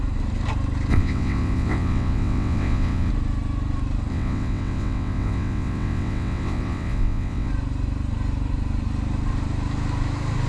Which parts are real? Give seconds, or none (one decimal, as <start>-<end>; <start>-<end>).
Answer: 0.0-0.9; 3.1-4.1; 7.5-10.5